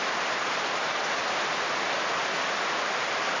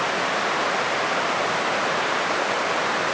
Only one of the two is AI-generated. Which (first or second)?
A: first